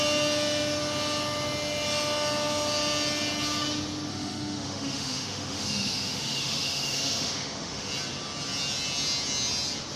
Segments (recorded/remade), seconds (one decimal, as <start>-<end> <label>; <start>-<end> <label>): 0.0-4.1 recorded; 4.1-7.9 remade; 7.9-10.0 recorded